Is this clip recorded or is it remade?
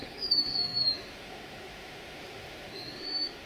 remade